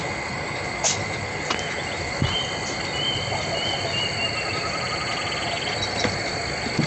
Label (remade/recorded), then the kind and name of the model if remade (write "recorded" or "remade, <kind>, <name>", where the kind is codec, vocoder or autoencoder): recorded